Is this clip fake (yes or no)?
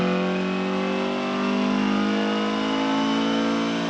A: no